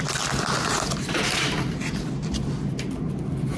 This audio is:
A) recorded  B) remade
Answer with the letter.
A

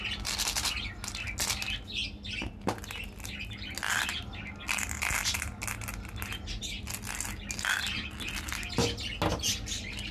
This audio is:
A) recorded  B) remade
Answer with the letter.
A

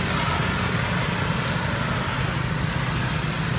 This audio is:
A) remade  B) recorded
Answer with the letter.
B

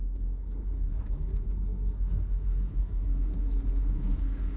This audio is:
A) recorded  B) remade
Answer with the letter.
B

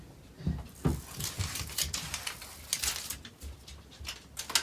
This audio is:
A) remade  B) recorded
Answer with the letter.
B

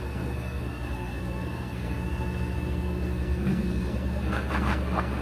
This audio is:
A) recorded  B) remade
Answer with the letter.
B